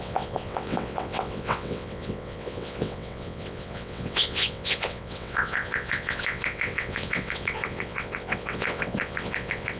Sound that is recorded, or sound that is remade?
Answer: remade